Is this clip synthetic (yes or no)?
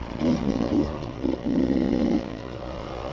yes